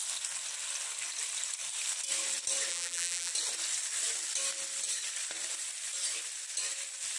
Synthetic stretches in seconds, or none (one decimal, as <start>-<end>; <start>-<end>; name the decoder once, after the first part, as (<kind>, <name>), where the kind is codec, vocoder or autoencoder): 2.7-3.3 (vocoder, BigVGAN v2)